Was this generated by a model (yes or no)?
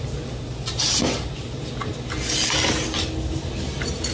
no